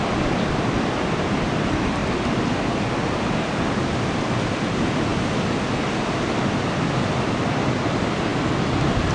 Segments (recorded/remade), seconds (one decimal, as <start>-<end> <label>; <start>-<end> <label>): 0.0-5.1 remade; 5.1-6.0 recorded; 6.0-8.3 remade; 8.3-9.1 recorded